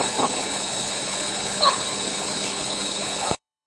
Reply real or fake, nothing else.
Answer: fake